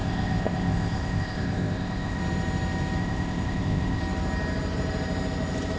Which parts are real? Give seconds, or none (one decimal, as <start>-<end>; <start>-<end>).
2.2-3.0; 4.0-5.8